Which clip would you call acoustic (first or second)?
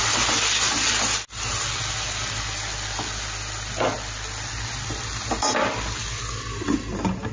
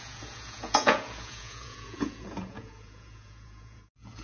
first